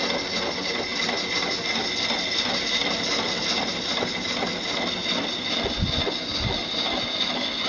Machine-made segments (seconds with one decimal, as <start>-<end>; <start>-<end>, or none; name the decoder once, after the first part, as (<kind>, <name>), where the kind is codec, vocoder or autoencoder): none